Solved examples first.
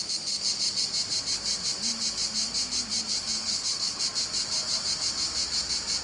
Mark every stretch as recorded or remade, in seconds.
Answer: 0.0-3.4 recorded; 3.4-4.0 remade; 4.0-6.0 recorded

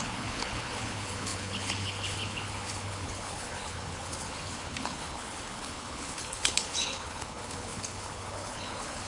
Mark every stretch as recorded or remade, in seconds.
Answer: 0.0-9.1 remade

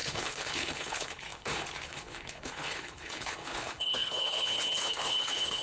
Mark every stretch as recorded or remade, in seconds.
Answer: 0.0-5.6 remade

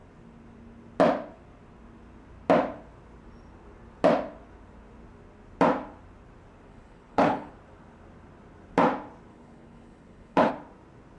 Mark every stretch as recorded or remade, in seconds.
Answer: 0.0-6.7 recorded; 6.7-7.5 remade; 7.5-9.3 recorded; 9.3-10.5 remade; 10.5-11.2 recorded

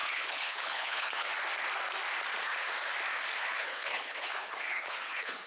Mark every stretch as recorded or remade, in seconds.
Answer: 0.0-1.3 remade; 1.3-3.4 recorded; 3.4-5.5 remade

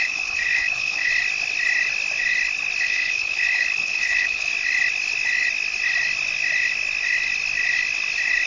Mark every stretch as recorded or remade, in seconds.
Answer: 0.0-1.1 remade; 1.1-2.8 recorded; 2.8-4.5 remade; 4.5-8.5 recorded